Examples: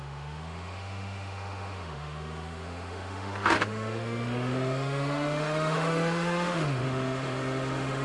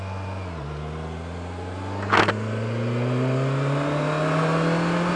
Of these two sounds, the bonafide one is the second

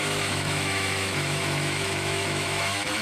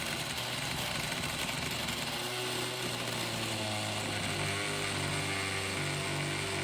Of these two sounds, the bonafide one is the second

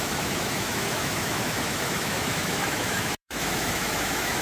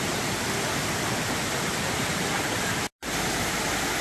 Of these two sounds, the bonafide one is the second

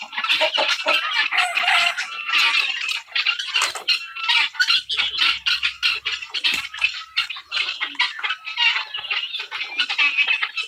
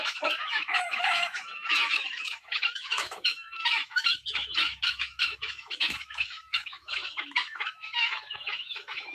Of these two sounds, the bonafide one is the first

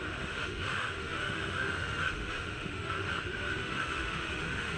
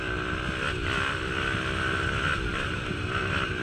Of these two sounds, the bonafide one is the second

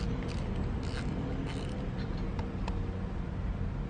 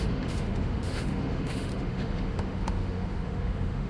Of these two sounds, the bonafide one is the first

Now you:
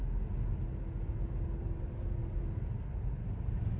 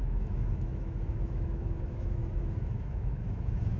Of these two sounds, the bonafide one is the first